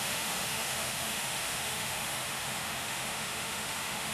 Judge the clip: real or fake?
fake